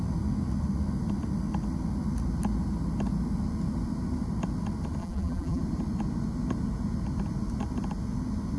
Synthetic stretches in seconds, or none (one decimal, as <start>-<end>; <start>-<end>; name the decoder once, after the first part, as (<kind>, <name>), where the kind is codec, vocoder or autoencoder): 5.0-5.6 (vocoder, BigVGAN v2)